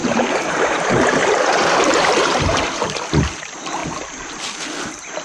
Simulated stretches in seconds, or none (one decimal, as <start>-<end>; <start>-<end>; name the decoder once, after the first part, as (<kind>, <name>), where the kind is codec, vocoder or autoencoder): 0.0-2.8 (vocoder, BigVGAN v2)